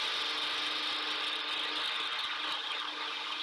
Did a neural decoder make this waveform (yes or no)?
no